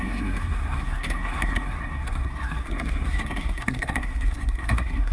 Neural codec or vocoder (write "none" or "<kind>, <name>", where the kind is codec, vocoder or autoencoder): codec, SNAC